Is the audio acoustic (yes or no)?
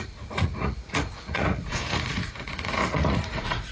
no